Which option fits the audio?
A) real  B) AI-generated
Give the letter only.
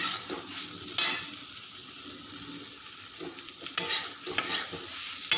A